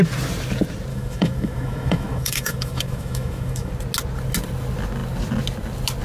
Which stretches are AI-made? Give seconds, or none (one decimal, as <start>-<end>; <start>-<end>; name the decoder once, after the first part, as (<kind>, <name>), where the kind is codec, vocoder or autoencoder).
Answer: 0.9-3.7 (autoencoder, DAC-VAE)